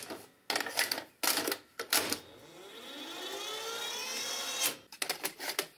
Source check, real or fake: real